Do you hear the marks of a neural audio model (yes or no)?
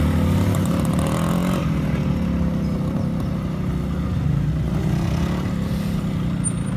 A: no